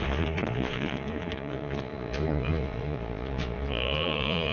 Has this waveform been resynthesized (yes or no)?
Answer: yes